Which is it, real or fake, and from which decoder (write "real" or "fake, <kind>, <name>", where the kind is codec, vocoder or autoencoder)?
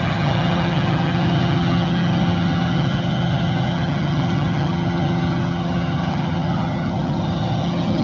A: fake, vocoder, HiFi-GAN